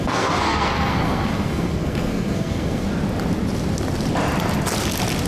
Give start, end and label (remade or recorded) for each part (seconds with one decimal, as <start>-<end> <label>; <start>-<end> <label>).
0.0-2.9 remade; 2.9-5.3 recorded